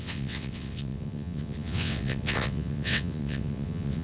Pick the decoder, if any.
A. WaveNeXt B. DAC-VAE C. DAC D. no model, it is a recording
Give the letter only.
A